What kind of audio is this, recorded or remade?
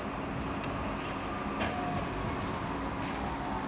recorded